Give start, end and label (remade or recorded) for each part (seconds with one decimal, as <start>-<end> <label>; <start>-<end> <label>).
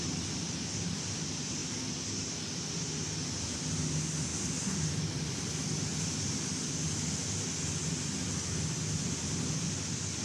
0.0-10.2 recorded